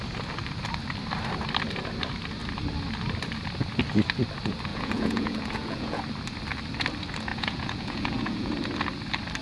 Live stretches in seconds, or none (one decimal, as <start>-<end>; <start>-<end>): 0.0-4.7; 6.0-7.3; 8.5-9.4